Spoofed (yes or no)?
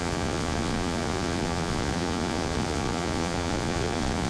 yes